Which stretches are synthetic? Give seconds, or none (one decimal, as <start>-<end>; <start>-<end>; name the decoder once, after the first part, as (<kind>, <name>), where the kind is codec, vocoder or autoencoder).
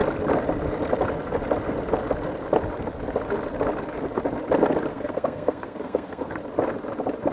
4.9-6.3 (codec, SNAC)